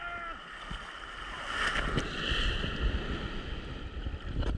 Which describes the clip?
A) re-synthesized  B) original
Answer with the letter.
B